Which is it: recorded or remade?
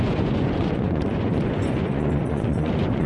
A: remade